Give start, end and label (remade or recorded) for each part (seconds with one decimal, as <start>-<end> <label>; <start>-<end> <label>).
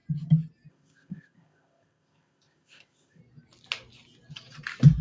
0.0-0.7 recorded; 0.7-3.2 remade; 3.2-5.0 recorded